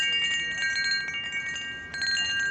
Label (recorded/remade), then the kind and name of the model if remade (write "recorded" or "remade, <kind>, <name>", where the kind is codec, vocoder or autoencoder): recorded